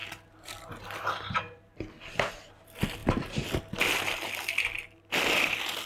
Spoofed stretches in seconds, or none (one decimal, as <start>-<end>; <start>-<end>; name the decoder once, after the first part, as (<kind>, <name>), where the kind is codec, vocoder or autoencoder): none